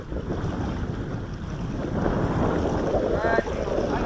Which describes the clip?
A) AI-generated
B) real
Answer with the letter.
B